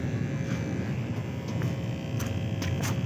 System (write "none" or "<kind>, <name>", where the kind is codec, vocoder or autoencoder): none